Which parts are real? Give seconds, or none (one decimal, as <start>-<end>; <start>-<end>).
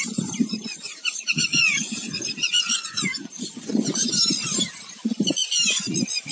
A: 0.0-0.4; 4.2-6.3